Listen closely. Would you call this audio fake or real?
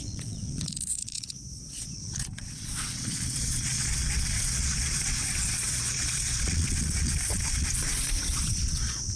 fake